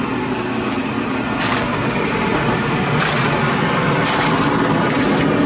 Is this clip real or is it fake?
real